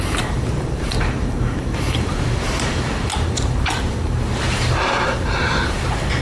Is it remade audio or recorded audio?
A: remade